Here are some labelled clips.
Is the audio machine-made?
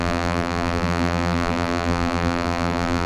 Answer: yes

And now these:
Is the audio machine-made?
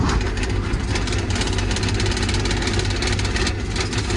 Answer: no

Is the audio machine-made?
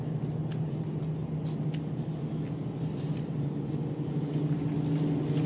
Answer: no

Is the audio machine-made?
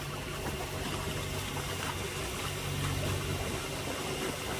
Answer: no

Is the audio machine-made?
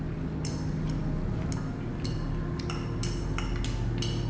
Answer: no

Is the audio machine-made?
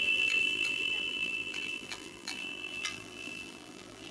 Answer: yes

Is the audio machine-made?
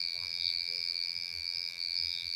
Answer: yes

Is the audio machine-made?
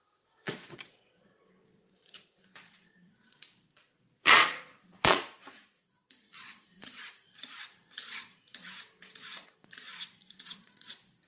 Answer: yes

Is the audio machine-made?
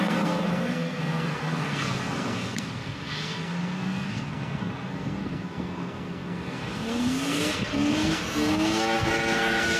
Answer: yes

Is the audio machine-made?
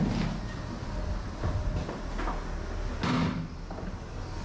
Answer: no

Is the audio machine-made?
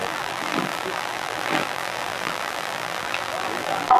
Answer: yes